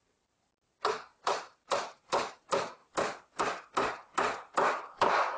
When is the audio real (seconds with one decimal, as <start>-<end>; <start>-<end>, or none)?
0.0-1.1; 2.4-5.4

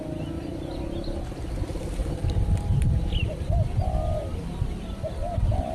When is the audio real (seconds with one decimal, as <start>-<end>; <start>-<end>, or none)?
0.0-2.0; 3.5-5.7

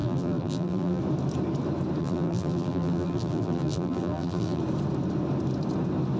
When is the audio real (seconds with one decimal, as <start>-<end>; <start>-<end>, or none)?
1.0-2.0; 4.6-6.2

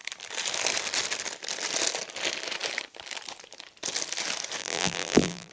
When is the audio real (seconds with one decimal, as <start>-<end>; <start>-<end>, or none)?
0.0-4.6

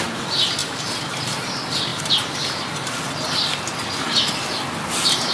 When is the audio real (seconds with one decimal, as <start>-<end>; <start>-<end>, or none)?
0.0-0.6; 1.5-5.3

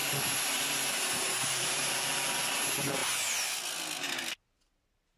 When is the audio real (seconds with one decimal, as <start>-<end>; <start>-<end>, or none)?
1.9-5.2